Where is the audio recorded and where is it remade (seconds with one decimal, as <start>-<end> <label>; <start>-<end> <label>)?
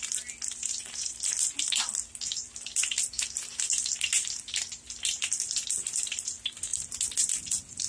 0.0-7.9 recorded